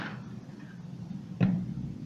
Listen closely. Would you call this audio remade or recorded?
remade